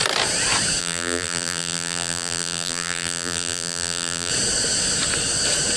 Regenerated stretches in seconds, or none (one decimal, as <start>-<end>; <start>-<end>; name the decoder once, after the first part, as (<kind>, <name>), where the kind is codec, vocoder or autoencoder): 0.8-4.3 (vocoder, BigVGAN v2)